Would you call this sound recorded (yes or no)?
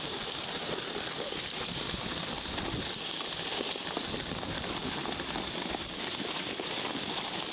yes